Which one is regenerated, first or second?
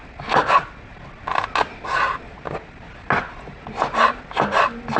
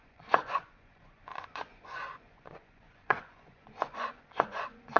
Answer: second